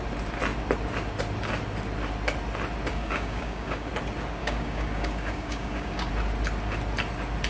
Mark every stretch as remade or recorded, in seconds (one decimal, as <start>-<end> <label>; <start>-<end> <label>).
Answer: 0.0-2.9 recorded; 2.9-3.9 remade; 3.9-4.4 recorded; 4.4-6.1 remade; 6.1-7.5 recorded